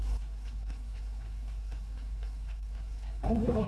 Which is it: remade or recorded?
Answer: remade